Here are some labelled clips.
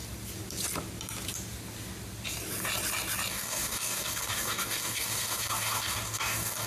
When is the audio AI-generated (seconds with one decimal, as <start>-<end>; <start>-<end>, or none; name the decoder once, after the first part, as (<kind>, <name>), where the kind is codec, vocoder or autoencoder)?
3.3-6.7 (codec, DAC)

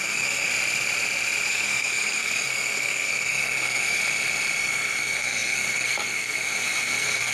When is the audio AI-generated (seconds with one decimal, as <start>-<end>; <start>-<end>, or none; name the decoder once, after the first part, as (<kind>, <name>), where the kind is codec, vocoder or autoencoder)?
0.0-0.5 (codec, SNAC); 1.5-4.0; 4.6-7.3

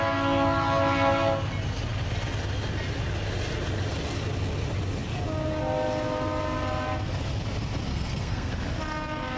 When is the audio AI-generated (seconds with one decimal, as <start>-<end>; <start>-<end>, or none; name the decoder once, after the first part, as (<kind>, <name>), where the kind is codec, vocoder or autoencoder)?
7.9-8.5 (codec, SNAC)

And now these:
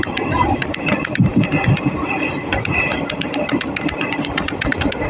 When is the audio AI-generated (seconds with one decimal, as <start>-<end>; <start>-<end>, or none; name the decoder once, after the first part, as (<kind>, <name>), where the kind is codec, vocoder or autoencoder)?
0.0-1.3 (vocoder, BigVGAN v2); 1.8-5.1